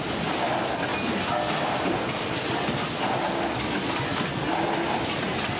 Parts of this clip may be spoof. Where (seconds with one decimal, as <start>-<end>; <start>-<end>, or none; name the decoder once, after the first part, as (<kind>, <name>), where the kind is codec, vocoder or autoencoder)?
none